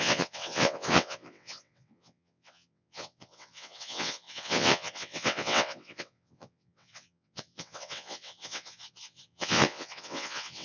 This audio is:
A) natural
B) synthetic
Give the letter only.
B